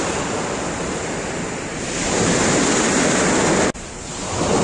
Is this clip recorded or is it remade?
recorded